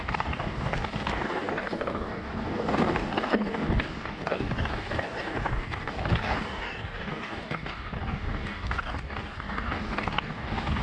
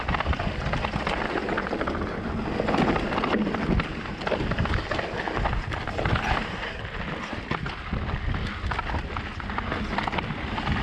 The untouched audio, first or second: second